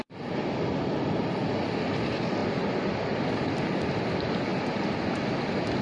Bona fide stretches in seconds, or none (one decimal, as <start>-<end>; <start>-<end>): 0.0-4.5; 5.3-5.8